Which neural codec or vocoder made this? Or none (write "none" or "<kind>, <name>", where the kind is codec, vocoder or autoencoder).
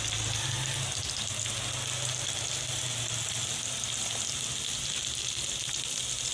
none